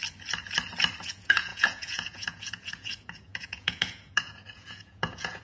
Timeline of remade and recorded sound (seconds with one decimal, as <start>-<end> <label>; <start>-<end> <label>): 0.0-1.0 recorded; 1.0-5.4 remade